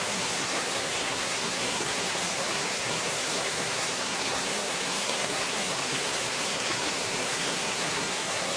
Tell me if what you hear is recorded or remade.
remade